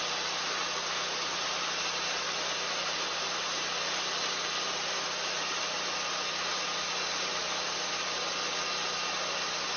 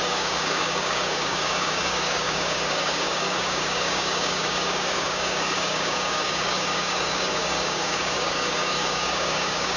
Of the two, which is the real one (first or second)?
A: first